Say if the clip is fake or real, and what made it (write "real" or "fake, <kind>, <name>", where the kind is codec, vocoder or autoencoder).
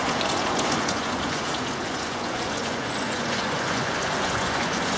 fake, vocoder, Vocos